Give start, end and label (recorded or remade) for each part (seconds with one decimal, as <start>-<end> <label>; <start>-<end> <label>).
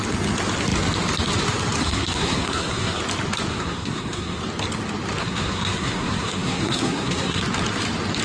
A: 0.0-1.8 recorded; 1.8-3.0 remade; 3.0-3.5 recorded; 3.5-4.4 remade; 4.4-5.2 recorded; 5.2-7.4 remade; 7.4-8.2 recorded